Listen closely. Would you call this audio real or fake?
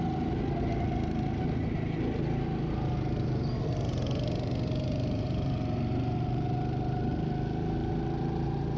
real